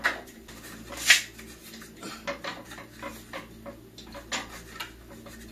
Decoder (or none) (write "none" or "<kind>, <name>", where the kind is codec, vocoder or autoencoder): none